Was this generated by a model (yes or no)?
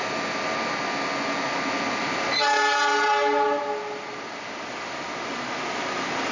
no